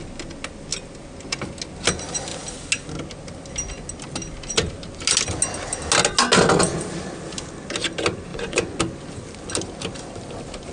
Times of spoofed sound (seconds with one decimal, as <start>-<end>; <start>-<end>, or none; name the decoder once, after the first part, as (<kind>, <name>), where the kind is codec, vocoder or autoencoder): 8.3-8.8 (vocoder, Vocos)